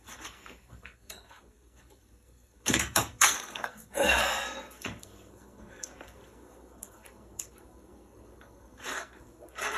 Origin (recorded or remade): remade